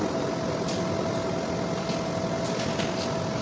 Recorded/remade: recorded